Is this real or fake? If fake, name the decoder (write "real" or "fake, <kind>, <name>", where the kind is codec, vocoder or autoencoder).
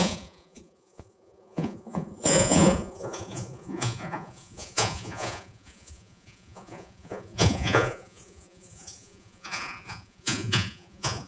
fake, vocoder, Vocos